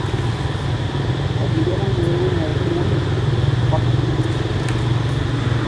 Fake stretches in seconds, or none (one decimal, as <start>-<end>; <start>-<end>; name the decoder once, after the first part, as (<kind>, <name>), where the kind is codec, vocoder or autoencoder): 1.4-2.0 (vocoder, BigVGAN v2)